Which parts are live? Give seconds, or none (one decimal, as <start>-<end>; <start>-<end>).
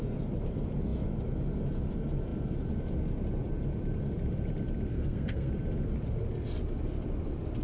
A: 0.0-4.9; 5.5-7.6